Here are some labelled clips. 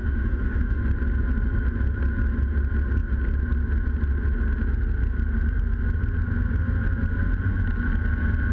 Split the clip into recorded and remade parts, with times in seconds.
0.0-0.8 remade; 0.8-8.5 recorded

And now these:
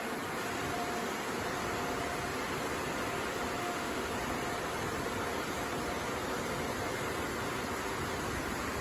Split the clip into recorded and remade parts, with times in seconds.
0.0-3.6 recorded; 3.6-4.1 remade; 4.1-8.8 recorded

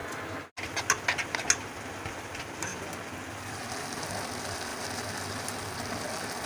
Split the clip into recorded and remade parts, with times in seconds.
0.0-6.5 recorded

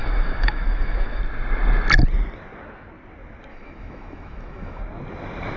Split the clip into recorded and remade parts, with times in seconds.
0.0-1.2 remade; 1.2-3.5 recorded; 3.5-4.8 remade; 4.8-5.6 recorded

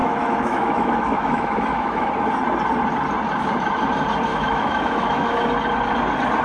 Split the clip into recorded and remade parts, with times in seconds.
0.0-2.1 remade; 2.1-4.3 recorded; 4.3-5.5 remade; 5.5-6.4 recorded

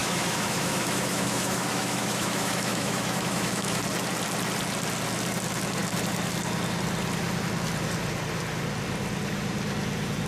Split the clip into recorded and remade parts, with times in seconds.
0.0-3.8 remade; 3.8-10.3 recorded

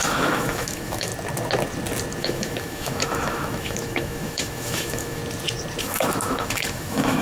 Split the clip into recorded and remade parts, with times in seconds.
0.0-1.1 remade; 1.1-2.2 recorded; 2.2-5.2 remade; 5.2-5.8 recorded; 5.8-7.2 remade